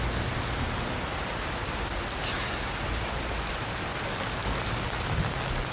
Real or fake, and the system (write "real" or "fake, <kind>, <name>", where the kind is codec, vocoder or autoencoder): real